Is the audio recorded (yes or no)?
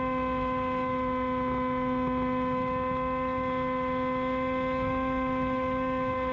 yes